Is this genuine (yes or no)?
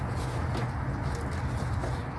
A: yes